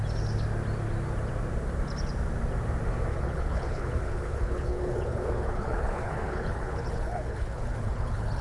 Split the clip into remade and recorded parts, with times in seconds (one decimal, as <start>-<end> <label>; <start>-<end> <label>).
0.0-3.1 recorded; 3.1-8.4 remade